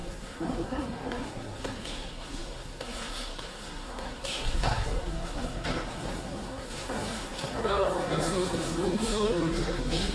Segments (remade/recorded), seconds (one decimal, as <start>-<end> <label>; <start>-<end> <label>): 0.0-10.1 remade